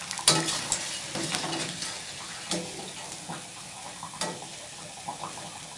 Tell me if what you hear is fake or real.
real